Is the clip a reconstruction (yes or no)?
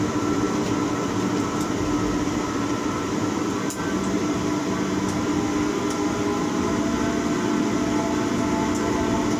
no